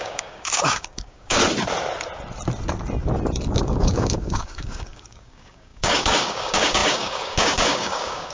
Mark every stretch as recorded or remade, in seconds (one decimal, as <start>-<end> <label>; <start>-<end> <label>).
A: 0.0-1.4 remade; 1.4-3.5 recorded; 3.5-8.3 remade